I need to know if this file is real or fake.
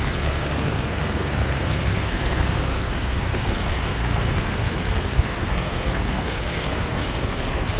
fake